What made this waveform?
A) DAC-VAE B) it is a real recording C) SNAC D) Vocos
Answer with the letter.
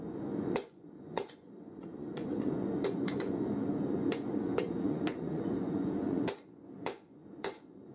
D